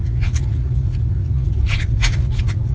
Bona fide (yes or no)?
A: no